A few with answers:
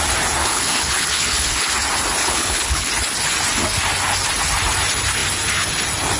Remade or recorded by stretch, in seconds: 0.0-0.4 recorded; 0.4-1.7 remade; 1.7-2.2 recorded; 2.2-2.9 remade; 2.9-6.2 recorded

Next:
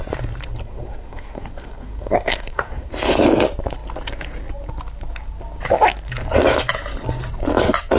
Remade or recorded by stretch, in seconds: 0.0-0.6 recorded; 0.6-2.9 remade; 2.9-8.0 recorded

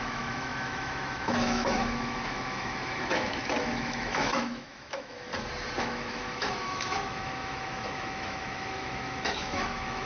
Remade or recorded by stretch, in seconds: 0.0-5.3 remade; 5.3-5.8 recorded; 5.8-10.1 remade

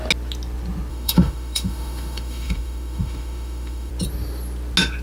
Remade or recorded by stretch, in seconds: 0.0-0.9 recorded; 0.9-3.9 remade; 3.9-5.0 recorded

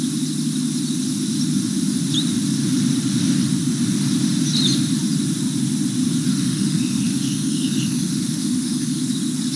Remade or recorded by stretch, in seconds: 0.0-6.3 recorded; 6.3-9.1 remade; 9.1-9.6 recorded

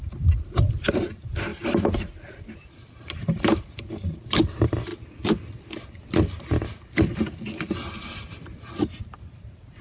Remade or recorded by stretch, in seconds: 0.0-4.9 remade; 4.9-9.0 recorded; 9.0-9.8 remade